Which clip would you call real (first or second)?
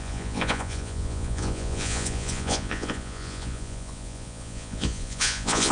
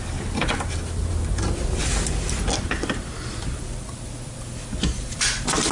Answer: second